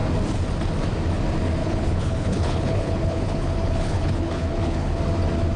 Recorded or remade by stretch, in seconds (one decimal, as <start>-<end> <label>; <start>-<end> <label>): 0.0-1.6 recorded; 1.6-5.0 remade; 5.0-5.6 recorded